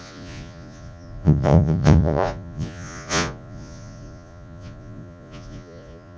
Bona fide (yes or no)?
no